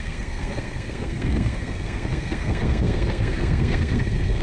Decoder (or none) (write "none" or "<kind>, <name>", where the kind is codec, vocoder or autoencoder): codec, SNAC